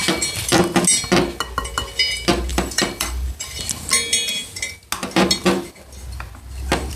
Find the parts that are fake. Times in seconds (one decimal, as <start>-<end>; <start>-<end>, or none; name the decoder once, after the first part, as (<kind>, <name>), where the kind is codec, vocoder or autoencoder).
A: 2.5-3.6 (vocoder, BigVGAN v2)